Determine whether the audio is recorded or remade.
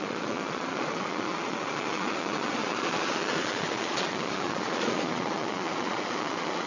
remade